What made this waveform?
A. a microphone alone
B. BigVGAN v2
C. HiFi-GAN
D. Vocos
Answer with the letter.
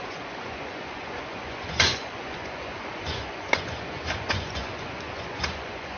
D